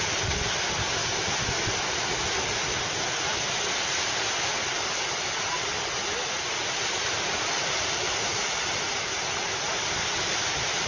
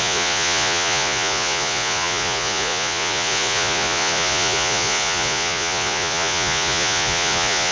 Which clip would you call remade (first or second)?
second